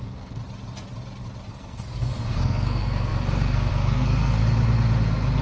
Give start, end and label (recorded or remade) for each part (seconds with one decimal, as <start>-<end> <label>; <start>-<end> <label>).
0.0-0.4 remade; 0.4-1.5 recorded; 1.5-4.4 remade; 4.4-5.4 recorded